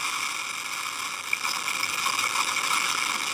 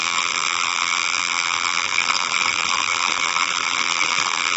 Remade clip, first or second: second